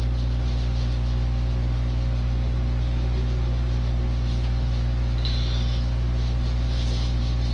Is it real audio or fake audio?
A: real